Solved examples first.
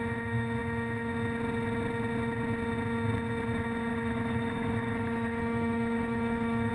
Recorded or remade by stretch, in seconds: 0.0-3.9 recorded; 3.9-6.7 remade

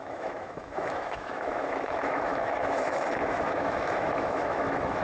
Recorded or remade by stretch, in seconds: 0.0-5.0 remade

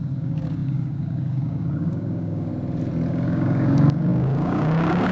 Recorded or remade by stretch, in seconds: 0.0-2.5 remade; 2.5-3.1 recorded; 3.1-5.1 remade

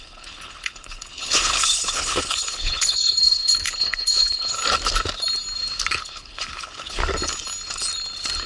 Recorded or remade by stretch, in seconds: 0.0-4.6 remade; 4.6-6.0 recorded; 6.0-7.0 remade; 7.0-8.5 recorded